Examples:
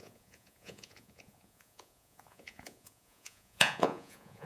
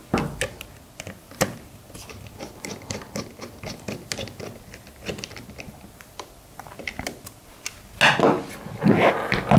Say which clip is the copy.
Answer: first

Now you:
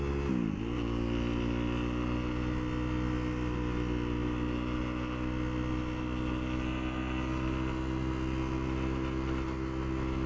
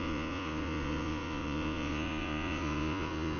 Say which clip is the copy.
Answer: second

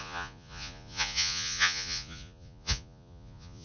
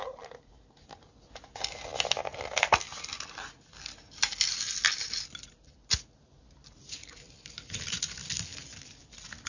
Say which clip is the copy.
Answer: first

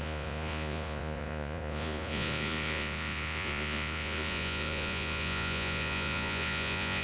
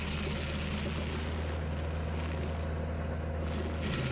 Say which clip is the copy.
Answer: first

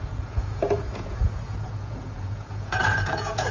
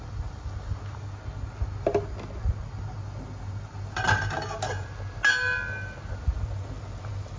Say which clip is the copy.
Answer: first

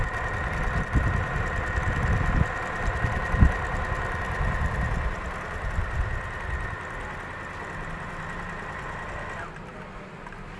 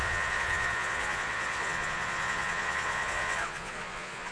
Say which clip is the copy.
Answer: second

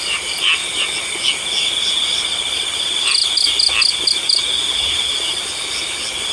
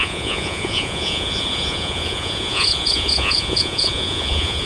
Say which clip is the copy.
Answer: second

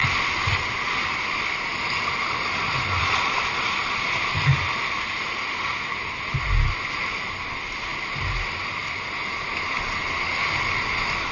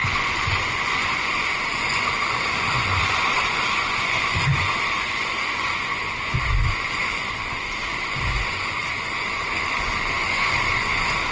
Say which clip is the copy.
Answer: second